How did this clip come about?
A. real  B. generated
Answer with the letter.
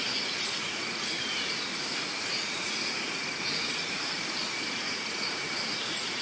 B